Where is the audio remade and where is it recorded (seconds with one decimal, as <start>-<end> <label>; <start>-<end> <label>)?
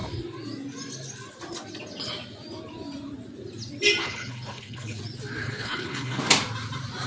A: 0.0-4.0 recorded; 4.0-5.0 remade; 5.0-5.4 recorded; 5.4-6.2 remade; 6.2-7.1 recorded